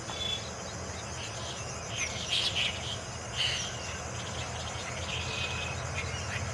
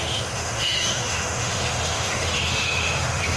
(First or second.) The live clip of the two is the first